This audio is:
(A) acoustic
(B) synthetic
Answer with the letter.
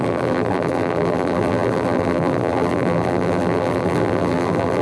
B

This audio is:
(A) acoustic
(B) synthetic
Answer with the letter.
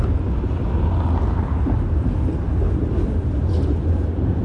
A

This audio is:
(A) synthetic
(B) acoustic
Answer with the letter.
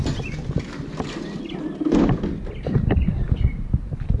B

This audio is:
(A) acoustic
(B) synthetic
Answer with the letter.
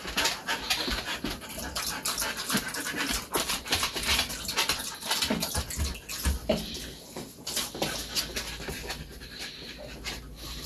A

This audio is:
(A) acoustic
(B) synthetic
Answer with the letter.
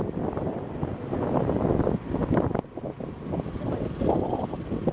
B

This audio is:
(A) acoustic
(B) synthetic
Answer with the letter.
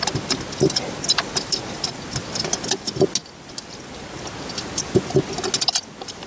A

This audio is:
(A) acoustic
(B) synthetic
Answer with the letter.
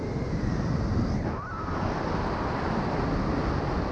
A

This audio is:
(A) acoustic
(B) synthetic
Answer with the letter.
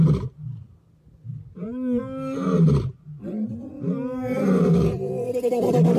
A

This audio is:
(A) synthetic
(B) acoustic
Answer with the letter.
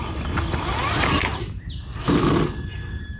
B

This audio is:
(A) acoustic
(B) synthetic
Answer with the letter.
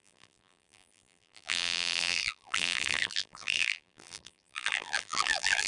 B